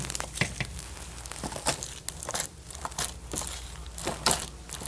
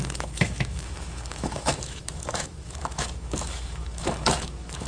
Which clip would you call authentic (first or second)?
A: first